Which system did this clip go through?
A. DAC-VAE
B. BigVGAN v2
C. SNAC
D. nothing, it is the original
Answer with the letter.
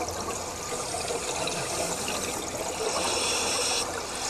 D